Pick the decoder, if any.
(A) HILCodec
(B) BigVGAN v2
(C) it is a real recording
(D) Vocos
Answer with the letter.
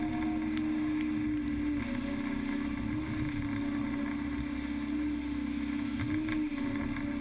C